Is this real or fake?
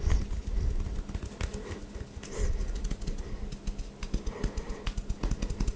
real